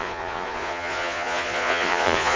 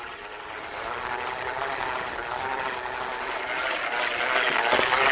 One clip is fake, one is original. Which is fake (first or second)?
first